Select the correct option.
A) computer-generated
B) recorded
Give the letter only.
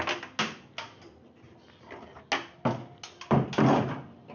B